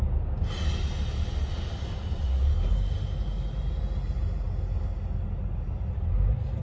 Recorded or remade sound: recorded